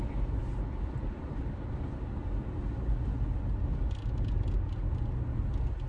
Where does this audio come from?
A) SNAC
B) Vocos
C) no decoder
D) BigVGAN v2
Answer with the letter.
C